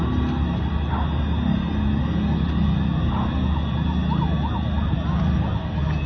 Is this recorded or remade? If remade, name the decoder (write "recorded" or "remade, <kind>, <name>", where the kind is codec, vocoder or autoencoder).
recorded